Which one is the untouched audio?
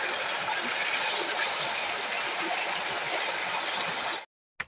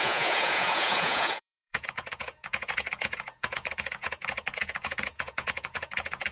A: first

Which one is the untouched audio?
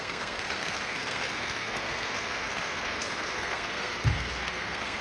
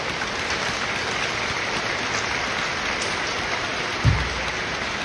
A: second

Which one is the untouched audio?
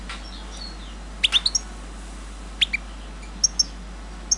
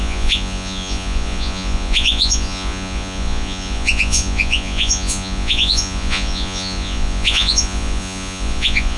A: first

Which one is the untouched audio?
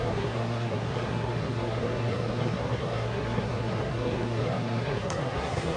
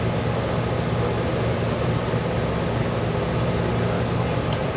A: second